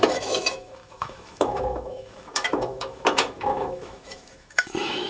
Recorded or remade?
remade